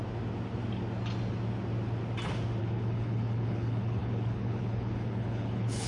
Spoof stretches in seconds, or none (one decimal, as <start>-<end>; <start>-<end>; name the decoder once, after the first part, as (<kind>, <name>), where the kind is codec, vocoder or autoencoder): 2.6-5.9 (codec, HILCodec)